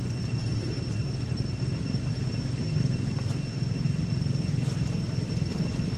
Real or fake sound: fake